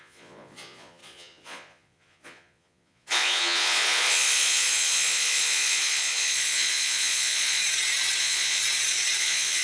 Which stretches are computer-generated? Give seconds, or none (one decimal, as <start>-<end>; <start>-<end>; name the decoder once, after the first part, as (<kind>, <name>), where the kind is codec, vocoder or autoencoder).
0.0-7.6 (vocoder, Vocos); 8.2-8.6; 9.2-9.6